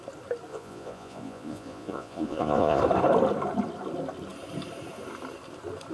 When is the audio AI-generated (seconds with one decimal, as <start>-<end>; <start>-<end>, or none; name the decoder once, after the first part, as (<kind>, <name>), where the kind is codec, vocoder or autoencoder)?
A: 0.5-2.8 (vocoder, Vocos)